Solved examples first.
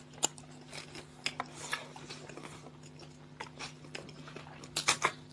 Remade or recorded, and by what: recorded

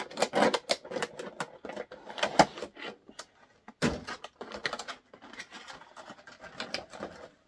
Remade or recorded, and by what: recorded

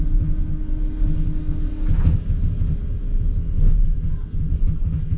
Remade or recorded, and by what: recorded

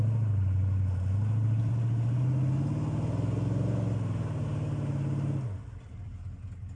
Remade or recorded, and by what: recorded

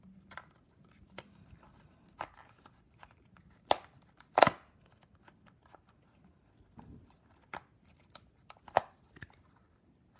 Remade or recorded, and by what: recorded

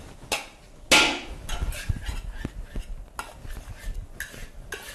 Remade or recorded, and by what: recorded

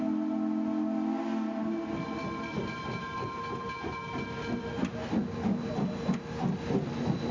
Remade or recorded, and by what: recorded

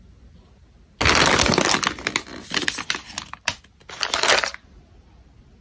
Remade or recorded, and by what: recorded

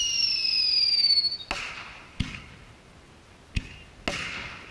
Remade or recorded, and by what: recorded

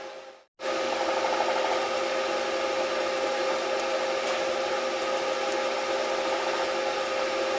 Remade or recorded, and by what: recorded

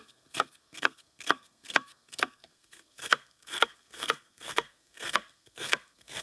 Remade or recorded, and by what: remade, codec, SNAC